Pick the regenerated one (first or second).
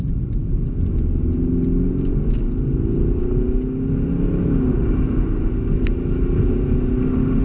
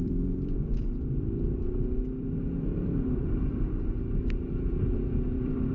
second